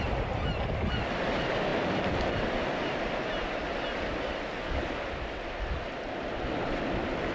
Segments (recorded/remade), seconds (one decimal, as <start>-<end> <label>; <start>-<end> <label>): 0.0-7.3 recorded